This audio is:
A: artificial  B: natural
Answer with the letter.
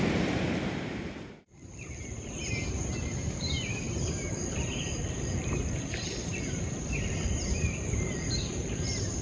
A